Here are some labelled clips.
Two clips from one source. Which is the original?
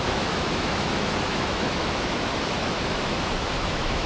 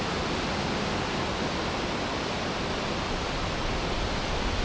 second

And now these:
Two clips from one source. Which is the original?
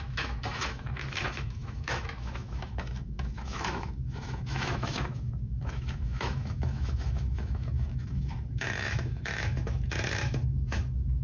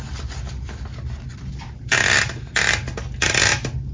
second